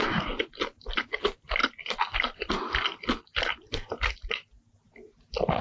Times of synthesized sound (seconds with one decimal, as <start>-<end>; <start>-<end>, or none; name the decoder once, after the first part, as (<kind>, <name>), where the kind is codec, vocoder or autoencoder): 1.6-2.6 (vocoder, BigVGAN v2)